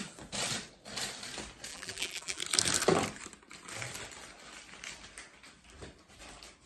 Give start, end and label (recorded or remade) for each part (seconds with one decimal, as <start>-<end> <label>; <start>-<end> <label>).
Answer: 0.0-1.7 recorded; 1.7-2.4 remade; 2.4-6.7 recorded